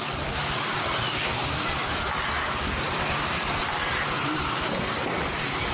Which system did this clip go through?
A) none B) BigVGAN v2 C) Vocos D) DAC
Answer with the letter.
A